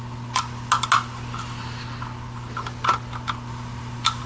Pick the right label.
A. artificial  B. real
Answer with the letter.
B